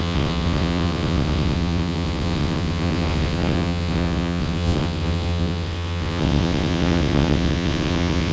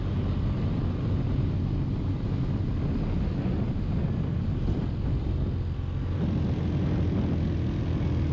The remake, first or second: first